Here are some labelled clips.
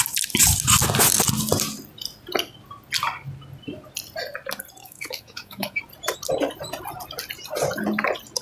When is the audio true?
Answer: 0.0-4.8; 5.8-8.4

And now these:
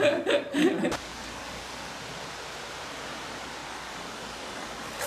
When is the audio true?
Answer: 0.0-1.1; 1.9-3.6

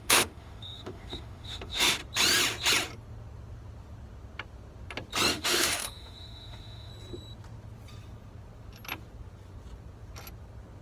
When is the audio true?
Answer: 2.0-5.3; 6.9-10.8

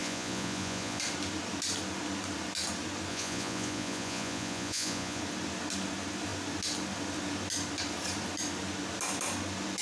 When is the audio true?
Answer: 1.0-3.1; 5.2-9.8

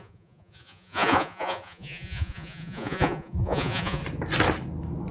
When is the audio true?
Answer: 4.0-5.1